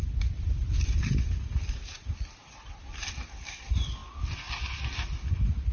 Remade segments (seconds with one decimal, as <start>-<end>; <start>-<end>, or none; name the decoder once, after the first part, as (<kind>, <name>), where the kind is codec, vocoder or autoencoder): 0.0-3.1 (vocoder, BigVGAN v2)